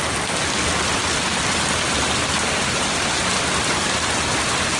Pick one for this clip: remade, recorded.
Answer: recorded